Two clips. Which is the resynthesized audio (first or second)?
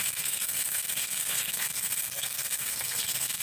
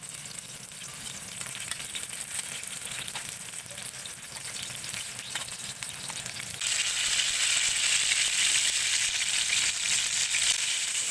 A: first